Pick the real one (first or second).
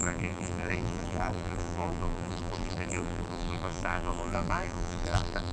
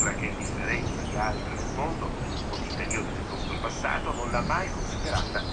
second